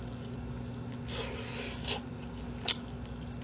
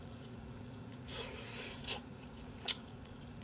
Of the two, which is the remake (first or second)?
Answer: second